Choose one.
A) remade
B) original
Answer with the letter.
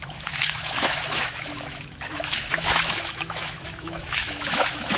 A